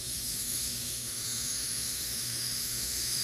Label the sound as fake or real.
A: fake